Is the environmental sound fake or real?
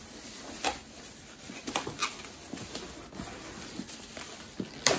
real